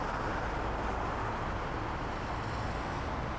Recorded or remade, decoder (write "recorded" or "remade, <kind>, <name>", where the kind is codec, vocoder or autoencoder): recorded